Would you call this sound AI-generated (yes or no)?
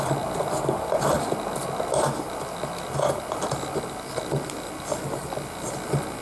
no